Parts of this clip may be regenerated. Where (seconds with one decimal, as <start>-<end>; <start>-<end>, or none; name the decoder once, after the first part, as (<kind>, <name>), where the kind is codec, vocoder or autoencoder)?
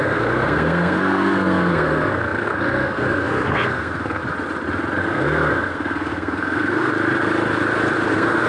0.0-4.2 (codec, SNAC); 5.0-6.9; 8.1-8.5